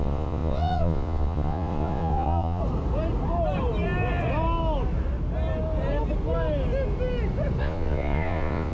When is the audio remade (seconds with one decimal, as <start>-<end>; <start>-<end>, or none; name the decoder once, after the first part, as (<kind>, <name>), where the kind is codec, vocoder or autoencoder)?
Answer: 0.0-2.6 (vocoder, Vocos); 7.6-8.7